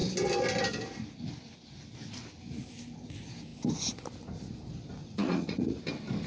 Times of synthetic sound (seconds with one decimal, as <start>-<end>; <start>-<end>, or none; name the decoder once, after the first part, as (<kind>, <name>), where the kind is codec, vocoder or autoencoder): 5.0-5.8 (vocoder, Vocos)